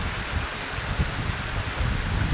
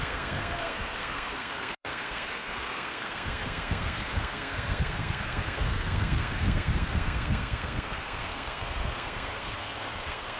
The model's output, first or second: second